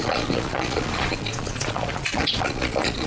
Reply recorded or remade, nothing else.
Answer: remade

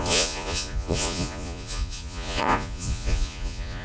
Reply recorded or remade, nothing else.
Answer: remade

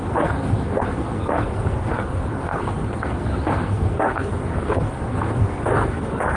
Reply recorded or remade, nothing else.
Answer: remade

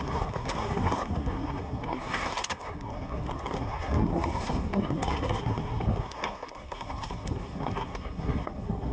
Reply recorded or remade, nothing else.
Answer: remade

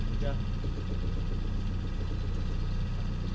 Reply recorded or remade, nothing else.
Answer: recorded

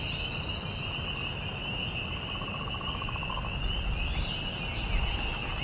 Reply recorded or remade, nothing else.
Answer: recorded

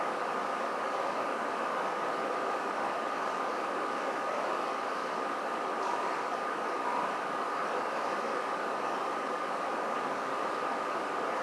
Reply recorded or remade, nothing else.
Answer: remade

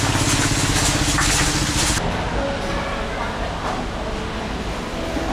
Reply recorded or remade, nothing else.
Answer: recorded